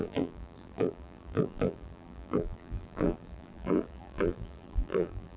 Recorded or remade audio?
remade